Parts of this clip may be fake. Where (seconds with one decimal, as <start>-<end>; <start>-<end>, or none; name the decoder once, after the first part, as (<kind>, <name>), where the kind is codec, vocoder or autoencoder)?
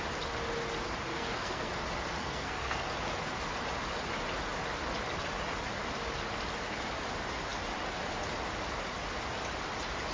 1.1-1.7 (codec, SNAC); 2.2-2.9